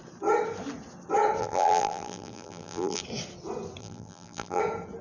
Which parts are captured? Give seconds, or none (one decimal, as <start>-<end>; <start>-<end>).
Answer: 0.0-1.4; 3.0-3.8; 4.6-5.0